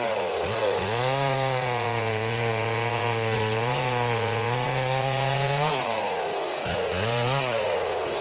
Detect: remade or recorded remade